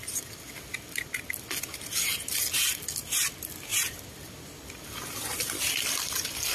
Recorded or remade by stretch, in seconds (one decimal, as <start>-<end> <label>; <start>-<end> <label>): 0.0-6.5 recorded